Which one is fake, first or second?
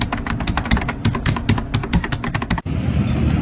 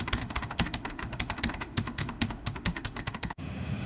second